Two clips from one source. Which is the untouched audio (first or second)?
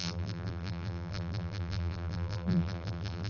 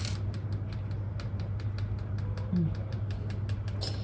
second